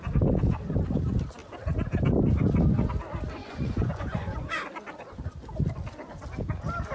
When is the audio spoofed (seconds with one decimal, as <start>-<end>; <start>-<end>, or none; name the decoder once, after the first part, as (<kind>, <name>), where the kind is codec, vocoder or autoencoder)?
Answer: 3.4-4.5 (vocoder, Vocos)